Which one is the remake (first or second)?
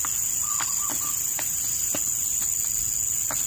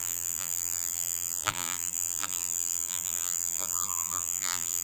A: second